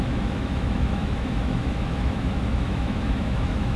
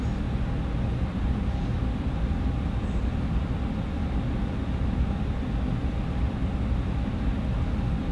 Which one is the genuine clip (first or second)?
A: second